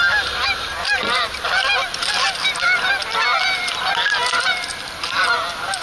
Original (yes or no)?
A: yes